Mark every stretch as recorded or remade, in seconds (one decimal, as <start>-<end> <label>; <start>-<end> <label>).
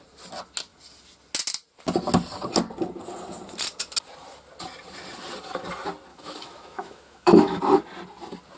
0.0-6.1 recorded; 6.1-7.6 remade; 7.6-8.6 recorded